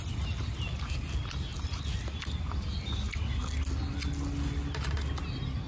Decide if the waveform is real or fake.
real